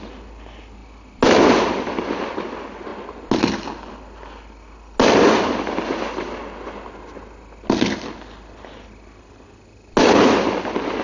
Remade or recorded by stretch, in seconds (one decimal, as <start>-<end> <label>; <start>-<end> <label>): 0.0-11.0 recorded

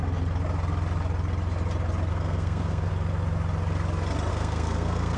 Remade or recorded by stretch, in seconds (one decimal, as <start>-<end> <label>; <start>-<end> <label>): 0.0-2.1 recorded; 2.1-2.9 remade; 2.9-4.3 recorded; 4.3-5.2 remade

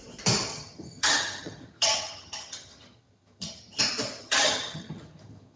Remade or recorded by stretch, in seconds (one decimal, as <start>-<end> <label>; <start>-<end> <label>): 0.0-0.5 recorded; 0.5-3.8 remade; 3.8-4.2 recorded; 4.2-5.6 remade

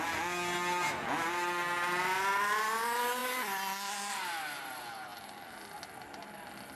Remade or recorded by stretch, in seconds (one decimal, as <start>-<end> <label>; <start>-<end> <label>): 0.0-6.8 recorded